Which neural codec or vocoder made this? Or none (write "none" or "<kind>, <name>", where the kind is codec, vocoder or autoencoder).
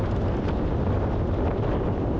none